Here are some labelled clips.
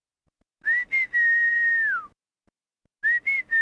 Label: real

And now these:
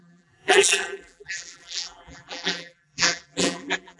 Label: fake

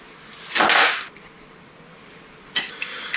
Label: real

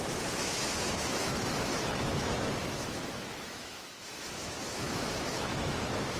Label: fake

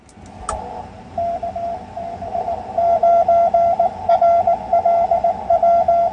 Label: real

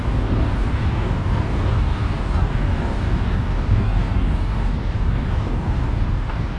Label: fake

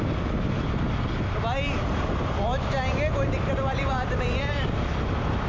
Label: real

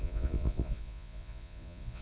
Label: fake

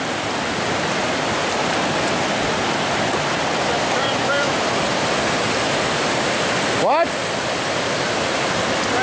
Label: fake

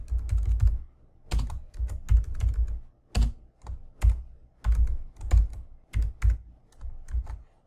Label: real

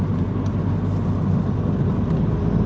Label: real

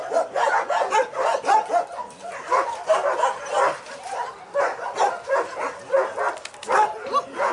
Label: real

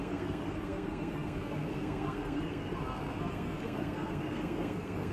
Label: fake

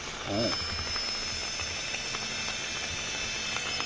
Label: real